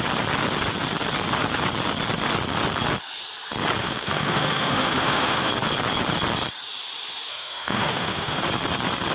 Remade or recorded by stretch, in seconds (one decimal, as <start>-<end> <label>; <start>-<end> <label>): 0.0-3.8 recorded; 3.8-5.5 remade; 5.5-7.3 recorded; 7.3-8.4 remade; 8.4-9.1 recorded